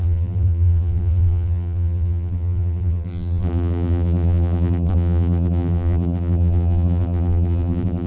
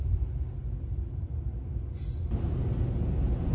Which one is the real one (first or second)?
second